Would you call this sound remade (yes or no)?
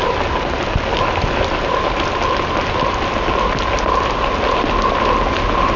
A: no